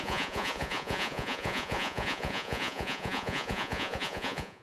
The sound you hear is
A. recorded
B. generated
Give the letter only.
B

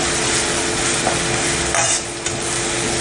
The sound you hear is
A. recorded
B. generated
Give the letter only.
A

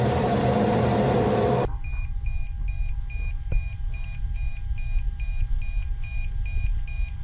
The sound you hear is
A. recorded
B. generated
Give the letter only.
A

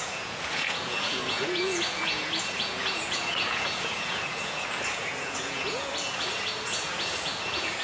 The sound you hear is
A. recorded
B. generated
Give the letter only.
B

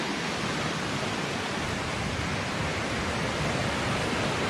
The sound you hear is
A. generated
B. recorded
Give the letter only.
B